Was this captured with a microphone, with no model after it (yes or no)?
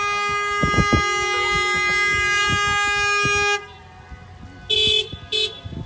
yes